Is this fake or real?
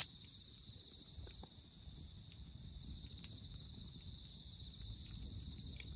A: real